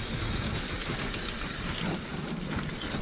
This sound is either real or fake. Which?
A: real